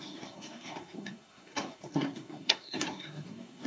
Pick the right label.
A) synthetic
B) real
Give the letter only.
A